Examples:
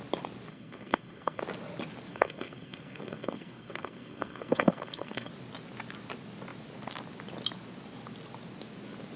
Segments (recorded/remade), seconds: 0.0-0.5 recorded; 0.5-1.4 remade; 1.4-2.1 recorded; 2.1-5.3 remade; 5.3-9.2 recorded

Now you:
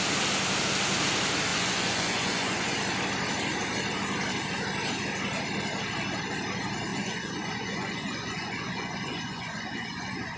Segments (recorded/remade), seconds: 0.0-1.5 recorded; 1.5-2.7 remade; 2.7-6.9 recorded; 6.9-10.4 remade

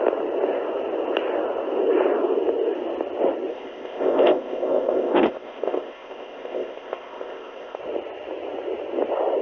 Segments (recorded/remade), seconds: 0.0-3.5 recorded; 3.5-7.8 remade; 7.8-9.4 recorded